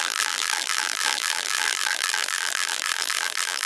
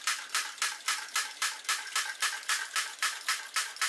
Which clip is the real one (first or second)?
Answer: second